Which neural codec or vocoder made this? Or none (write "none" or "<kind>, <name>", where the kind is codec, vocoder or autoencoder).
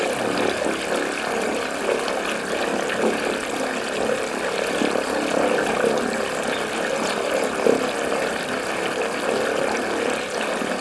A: none